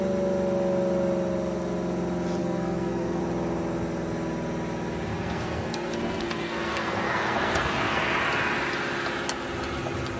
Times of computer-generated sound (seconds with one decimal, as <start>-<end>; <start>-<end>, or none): 2.4-3.2; 5.1-8.1